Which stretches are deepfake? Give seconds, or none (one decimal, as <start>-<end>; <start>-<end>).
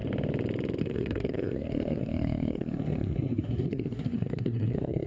0.8-5.1